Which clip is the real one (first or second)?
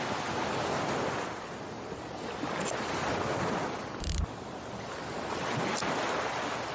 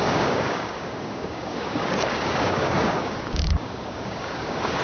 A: first